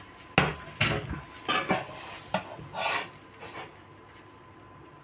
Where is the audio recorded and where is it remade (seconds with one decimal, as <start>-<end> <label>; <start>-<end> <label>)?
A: 0.0-5.0 recorded

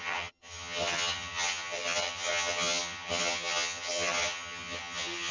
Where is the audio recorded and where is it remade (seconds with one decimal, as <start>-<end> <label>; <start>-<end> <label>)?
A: 0.0-5.3 remade

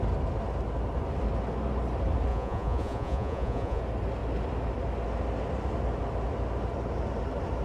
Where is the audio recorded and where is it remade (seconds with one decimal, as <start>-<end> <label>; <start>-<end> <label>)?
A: 0.0-2.3 recorded; 2.3-3.8 remade; 3.8-7.6 recorded